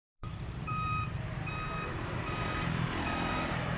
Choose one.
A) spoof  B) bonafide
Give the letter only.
A